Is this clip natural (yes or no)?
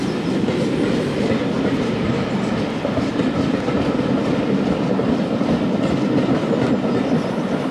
yes